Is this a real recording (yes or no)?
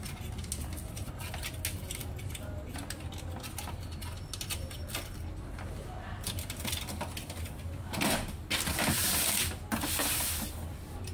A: yes